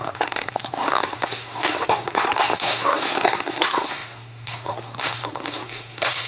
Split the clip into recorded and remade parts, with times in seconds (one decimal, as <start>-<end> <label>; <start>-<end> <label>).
0.0-6.3 remade